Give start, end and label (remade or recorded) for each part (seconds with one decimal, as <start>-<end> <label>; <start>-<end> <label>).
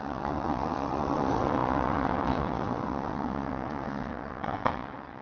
0.0-5.2 remade